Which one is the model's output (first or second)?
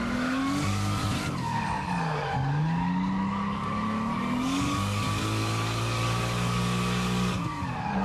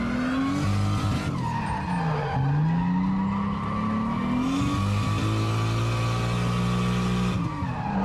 first